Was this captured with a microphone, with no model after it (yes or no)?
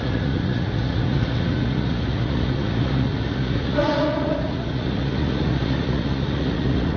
no